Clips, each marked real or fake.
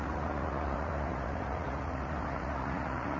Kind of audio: fake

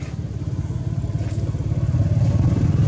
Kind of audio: real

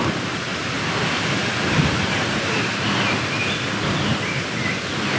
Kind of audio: real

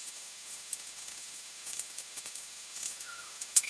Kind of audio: fake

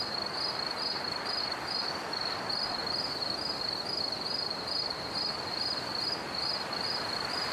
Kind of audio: real